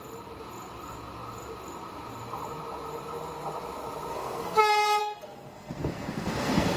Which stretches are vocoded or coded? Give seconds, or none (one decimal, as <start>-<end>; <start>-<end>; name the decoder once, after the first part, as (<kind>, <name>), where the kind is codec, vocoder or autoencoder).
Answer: 4.1-4.6 (codec, SNAC); 5.0-6.8